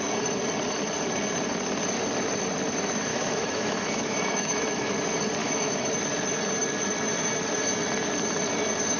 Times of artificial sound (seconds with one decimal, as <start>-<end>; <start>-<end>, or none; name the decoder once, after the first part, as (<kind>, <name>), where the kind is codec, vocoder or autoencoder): 3.1-4.9 (autoencoder, DAC-VAE); 5.4-5.9